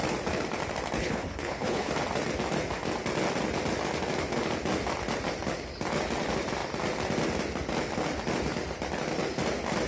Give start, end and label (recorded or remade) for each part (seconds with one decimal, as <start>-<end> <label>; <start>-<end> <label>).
0.0-1.0 recorded; 1.0-1.9 remade; 1.9-9.9 recorded